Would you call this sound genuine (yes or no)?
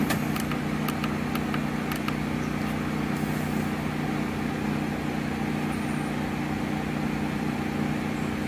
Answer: yes